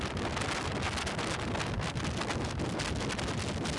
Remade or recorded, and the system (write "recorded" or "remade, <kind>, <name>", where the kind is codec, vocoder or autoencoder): recorded